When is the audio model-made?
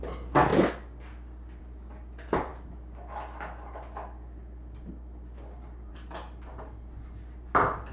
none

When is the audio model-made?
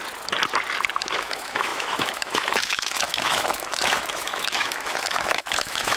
1.0-6.0 (autoencoder, DAC-VAE)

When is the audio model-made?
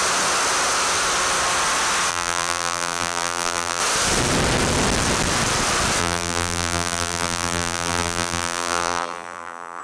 2.1-3.8 (vocoder, BigVGAN v2); 6.0-9.8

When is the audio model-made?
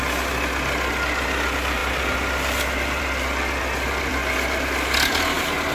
none